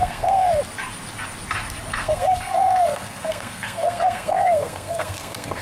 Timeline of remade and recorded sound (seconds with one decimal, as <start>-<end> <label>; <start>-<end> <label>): 0.0-0.6 remade; 0.6-1.9 recorded; 1.9-5.6 remade